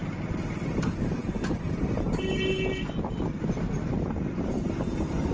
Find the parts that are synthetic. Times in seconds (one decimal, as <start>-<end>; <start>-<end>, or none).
none